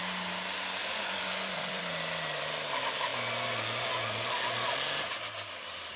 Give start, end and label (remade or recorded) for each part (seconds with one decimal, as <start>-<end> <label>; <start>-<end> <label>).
0.0-0.8 recorded; 0.8-1.8 remade; 1.8-6.0 recorded